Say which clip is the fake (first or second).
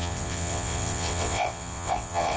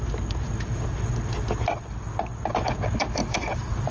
first